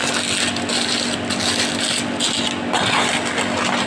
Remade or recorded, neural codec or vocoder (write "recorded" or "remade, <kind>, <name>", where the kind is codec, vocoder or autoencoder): recorded